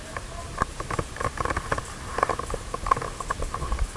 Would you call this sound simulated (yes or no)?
no